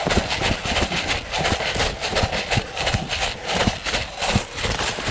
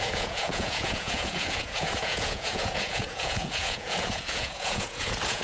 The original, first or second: first